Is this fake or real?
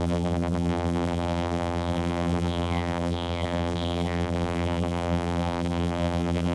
fake